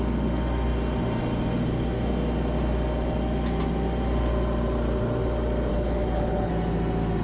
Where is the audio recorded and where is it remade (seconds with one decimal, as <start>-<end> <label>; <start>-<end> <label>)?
0.0-5.7 recorded; 5.7-6.5 remade; 6.5-7.2 recorded